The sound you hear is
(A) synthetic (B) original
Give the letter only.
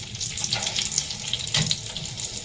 B